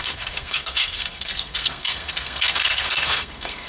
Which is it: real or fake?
fake